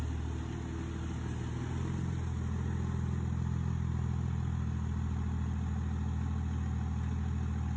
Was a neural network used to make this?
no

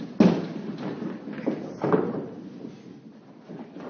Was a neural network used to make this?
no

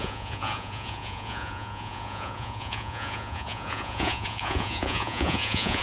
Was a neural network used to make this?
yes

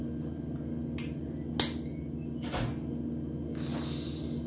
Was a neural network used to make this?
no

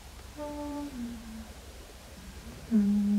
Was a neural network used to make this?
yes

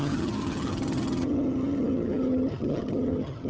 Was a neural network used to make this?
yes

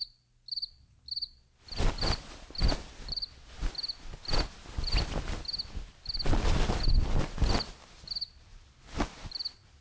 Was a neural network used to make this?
no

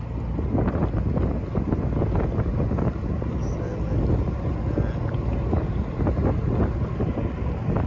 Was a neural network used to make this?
no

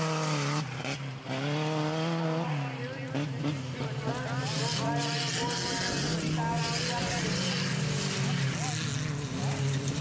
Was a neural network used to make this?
no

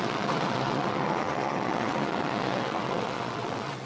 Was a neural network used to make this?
yes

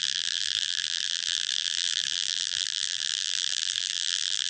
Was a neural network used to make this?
yes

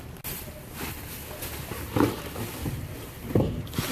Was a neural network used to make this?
no